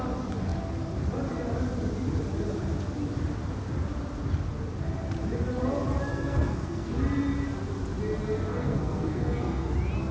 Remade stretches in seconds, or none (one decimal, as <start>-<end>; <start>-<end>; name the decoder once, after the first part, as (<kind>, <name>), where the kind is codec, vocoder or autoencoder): 6.1-6.9 (codec, SNAC); 8.5-9.7